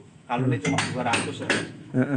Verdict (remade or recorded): remade